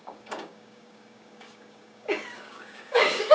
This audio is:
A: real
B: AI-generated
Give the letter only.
B